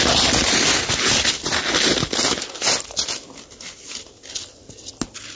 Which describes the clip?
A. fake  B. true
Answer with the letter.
B